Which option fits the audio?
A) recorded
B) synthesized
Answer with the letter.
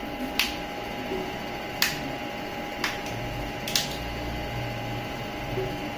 A